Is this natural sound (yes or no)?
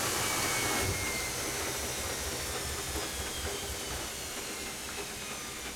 yes